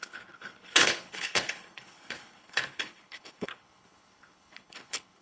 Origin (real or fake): fake